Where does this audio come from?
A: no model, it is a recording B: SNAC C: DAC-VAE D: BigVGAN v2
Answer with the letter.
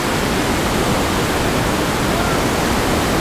A